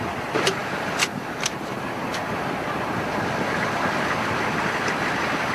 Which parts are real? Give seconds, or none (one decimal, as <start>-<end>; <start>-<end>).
0.0-5.5